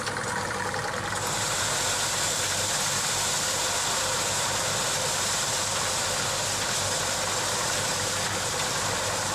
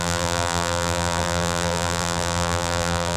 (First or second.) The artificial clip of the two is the second